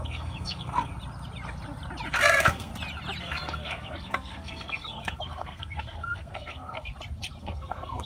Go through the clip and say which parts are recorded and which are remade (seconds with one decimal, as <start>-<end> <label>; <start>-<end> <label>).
0.0-0.9 remade; 0.9-2.1 recorded; 2.1-2.7 remade; 2.7-3.2 recorded; 3.2-6.9 remade; 6.9-7.4 recorded; 7.4-8.1 remade